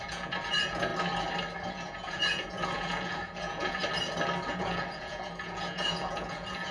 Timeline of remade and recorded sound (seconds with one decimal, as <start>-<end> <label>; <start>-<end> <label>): 0.0-0.9 remade; 0.9-1.7 recorded; 1.7-3.8 remade; 3.8-4.5 recorded; 4.5-6.7 remade